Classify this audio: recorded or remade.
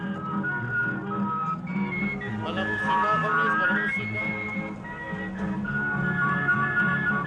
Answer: recorded